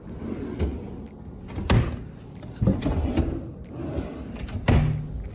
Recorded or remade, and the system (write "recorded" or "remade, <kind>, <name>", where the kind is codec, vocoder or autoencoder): recorded